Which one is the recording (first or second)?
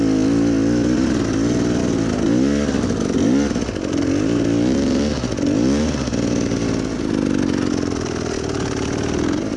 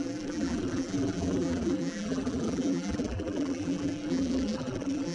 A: first